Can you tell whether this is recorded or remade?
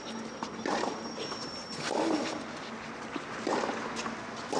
recorded